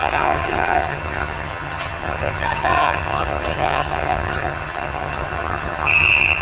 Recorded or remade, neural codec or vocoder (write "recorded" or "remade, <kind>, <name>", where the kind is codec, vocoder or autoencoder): remade, vocoder, HiFi-GAN